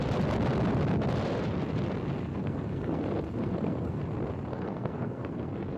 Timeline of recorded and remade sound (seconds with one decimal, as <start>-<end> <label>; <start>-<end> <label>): 0.0-2.3 recorded; 2.3-4.0 remade; 4.0-4.5 recorded; 4.5-5.8 remade